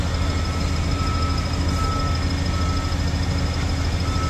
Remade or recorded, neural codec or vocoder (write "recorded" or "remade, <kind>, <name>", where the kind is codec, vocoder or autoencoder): recorded